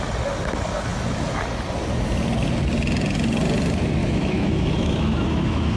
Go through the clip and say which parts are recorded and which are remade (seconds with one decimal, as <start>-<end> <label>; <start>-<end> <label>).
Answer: 0.0-4.0 recorded; 4.0-5.8 remade